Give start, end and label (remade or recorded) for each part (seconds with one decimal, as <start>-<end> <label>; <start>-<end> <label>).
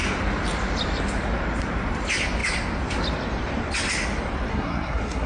0.0-4.5 recorded; 4.5-5.3 remade